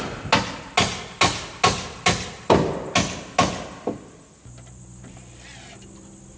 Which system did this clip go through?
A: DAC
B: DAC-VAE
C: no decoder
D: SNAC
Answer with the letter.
C